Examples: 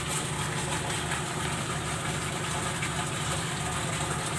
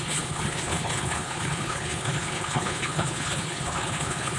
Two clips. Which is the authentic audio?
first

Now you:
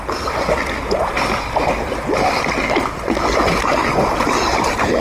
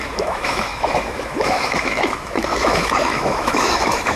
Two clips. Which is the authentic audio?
first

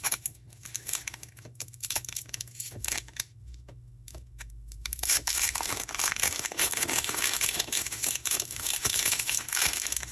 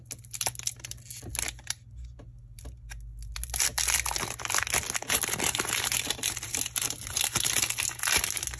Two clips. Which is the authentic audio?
second